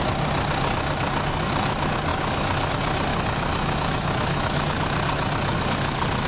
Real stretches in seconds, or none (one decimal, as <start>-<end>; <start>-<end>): 0.0-2.1; 2.7-3.1; 4.6-6.3